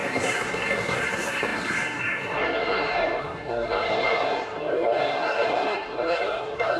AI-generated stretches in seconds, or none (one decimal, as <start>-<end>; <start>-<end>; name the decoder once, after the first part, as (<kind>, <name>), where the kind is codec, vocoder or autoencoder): 0.0-6.8 (codec, SNAC)